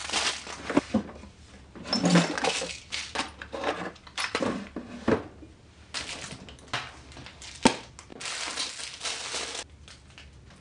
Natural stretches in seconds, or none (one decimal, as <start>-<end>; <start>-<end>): 0.0-10.6